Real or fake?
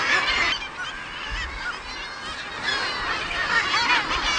real